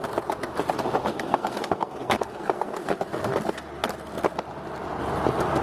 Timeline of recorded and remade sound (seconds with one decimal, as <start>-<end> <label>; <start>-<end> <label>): 0.0-1.1 recorded; 1.1-3.0 remade; 3.0-5.6 recorded